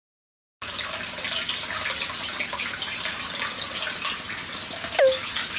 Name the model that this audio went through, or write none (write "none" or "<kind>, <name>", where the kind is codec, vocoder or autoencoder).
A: none